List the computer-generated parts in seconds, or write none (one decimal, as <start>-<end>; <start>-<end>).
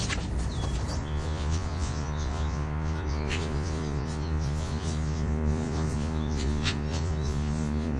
1.0-8.0